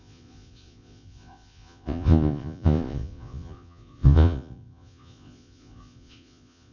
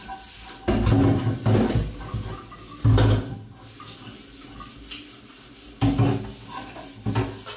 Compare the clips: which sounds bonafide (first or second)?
second